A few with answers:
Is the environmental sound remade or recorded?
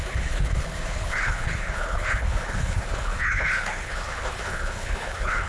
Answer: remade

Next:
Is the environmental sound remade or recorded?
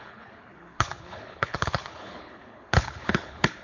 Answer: remade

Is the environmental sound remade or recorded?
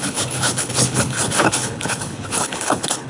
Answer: remade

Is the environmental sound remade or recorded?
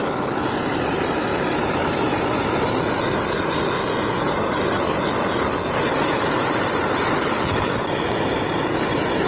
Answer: recorded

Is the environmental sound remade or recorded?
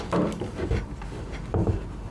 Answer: recorded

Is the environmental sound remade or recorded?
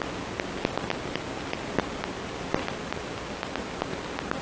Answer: recorded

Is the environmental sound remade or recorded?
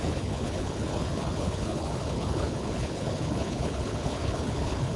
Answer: remade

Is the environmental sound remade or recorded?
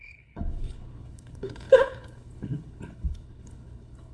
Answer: remade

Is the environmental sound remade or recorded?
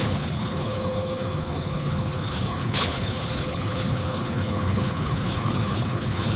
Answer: remade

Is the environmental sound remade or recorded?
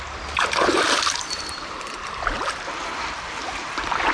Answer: recorded